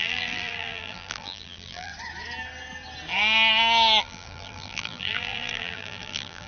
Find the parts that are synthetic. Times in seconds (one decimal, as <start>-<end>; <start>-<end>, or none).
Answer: 0.0-1.9; 4.0-6.5